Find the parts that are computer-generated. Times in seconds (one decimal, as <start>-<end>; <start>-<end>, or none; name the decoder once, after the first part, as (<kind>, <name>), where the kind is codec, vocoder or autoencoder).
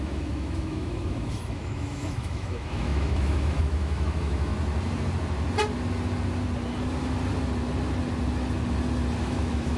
0.0-4.5 (autoencoder, DAC-VAE); 9.2-9.8